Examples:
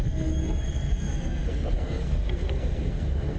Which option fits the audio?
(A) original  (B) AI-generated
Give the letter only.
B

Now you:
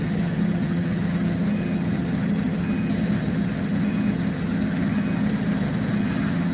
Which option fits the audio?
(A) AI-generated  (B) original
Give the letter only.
A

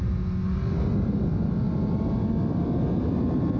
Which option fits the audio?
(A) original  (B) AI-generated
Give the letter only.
A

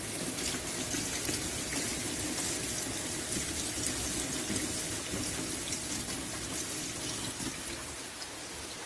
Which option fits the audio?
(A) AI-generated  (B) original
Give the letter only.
B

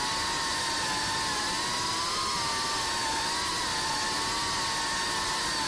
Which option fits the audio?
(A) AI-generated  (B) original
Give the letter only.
B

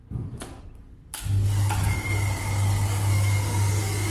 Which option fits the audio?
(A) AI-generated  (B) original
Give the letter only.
A